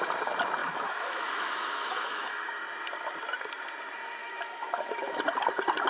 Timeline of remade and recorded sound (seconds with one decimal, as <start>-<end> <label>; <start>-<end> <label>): 0.0-0.6 recorded; 0.6-2.2 remade; 2.2-4.2 recorded; 4.2-5.2 remade; 5.2-5.9 recorded